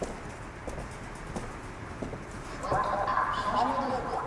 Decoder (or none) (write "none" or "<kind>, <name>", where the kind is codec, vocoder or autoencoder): none